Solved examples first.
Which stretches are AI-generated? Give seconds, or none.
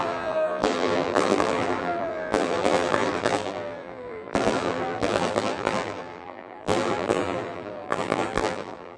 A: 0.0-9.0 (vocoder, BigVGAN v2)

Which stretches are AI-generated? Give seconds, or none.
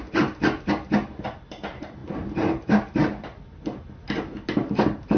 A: 0.0-2.0 (vocoder, BigVGAN v2); 4.5-5.2